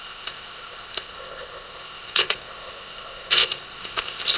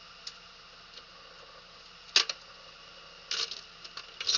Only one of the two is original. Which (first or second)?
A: second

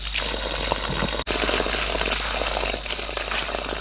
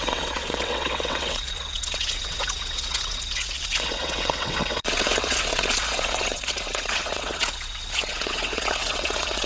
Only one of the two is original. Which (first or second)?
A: first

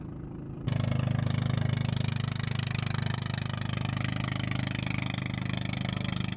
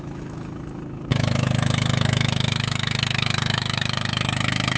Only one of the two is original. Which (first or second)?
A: first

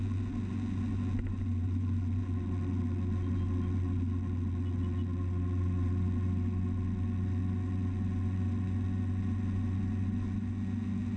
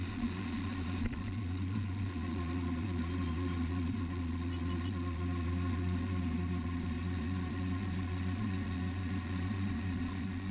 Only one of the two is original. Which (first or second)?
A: first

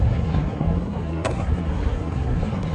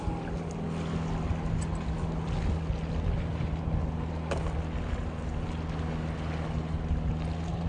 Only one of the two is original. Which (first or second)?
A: second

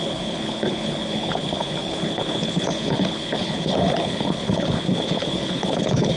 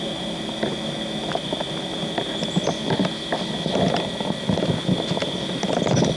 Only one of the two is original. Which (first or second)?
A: second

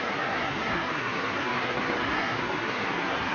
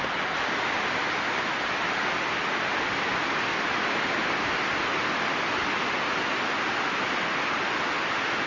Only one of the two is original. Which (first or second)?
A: second